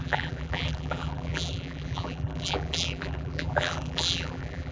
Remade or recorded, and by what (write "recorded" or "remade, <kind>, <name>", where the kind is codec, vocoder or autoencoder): remade, vocoder, BigVGAN v2